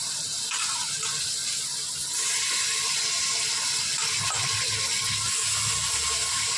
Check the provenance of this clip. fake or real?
real